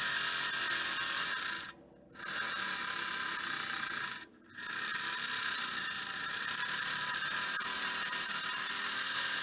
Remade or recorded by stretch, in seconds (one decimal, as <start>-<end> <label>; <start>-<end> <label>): 0.0-4.9 recorded; 4.9-9.4 remade